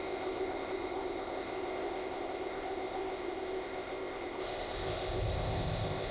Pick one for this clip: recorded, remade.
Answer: remade